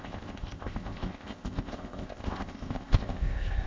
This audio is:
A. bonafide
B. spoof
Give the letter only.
B